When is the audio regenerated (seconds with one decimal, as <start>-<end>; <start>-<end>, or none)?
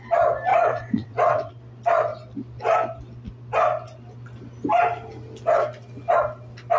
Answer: 0.5-1.5